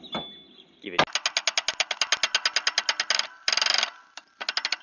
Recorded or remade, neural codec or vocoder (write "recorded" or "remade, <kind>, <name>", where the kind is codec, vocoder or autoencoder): recorded